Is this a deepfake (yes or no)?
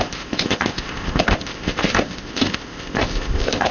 yes